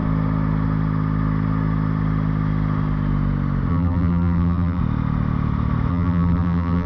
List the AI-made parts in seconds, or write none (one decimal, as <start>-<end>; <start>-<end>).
3.7-4.8; 5.9-6.9